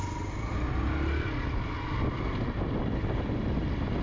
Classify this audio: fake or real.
real